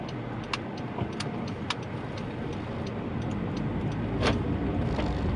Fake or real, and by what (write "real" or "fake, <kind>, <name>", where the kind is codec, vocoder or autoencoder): real